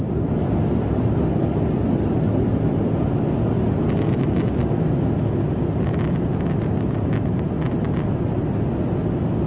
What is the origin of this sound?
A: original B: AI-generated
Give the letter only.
A